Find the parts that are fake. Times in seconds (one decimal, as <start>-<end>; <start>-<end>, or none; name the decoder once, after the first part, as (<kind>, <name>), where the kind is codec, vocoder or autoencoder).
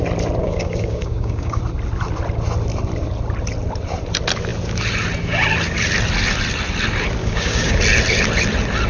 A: 0.4-1.6 (codec, DAC); 7.2-7.8